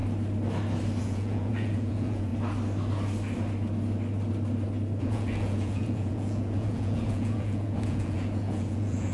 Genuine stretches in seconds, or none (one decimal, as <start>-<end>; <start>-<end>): 0.0-1.0; 2.3-5.0